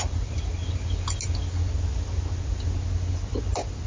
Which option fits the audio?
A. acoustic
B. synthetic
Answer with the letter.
A